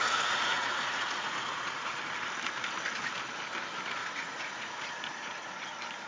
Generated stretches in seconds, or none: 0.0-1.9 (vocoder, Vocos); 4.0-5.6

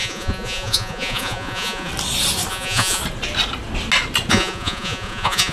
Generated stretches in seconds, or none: 0.0-1.9 (vocoder, Vocos); 2.5-3.0; 4.3-5.5

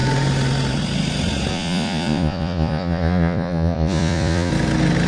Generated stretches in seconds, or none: 1.5-4.5 (vocoder, Vocos)

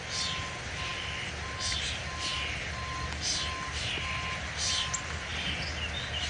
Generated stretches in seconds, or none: none

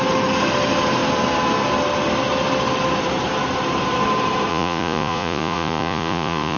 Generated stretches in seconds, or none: 4.5-6.6 (vocoder, Vocos)

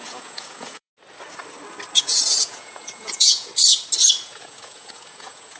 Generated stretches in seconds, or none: 0.0-0.9 (vocoder, Vocos); 2.0-3.5; 4.1-5.6

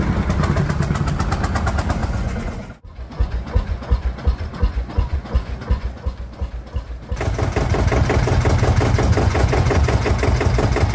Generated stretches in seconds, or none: 2.0-6.5 (vocoder, Vocos); 9.1-10.1